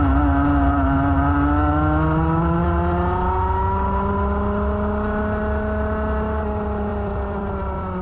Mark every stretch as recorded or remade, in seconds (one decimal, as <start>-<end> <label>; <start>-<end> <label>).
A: 0.0-6.9 recorded; 6.9-8.0 remade